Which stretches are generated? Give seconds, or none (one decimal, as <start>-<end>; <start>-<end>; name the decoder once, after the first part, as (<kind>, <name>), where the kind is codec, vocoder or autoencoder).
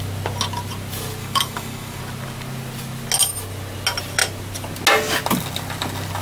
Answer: 1.2-2.0 (codec, DAC)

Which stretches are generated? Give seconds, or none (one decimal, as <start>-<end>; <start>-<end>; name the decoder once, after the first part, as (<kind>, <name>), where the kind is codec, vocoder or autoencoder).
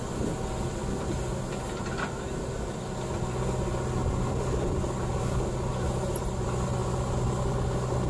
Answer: none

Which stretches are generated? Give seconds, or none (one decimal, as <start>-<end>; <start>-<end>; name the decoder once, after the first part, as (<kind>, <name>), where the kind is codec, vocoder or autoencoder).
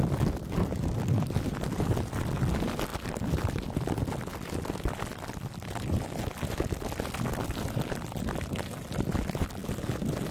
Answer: none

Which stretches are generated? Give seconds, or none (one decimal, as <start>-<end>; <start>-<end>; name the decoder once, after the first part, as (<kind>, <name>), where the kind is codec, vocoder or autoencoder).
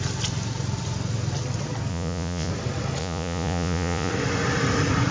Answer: 1.9-2.5 (vocoder, Vocos); 3.0-4.1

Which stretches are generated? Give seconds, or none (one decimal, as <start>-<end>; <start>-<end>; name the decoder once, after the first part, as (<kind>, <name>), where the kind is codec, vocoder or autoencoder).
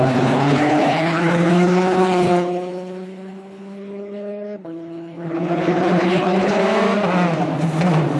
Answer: 0.0-6.6 (codec, HILCodec)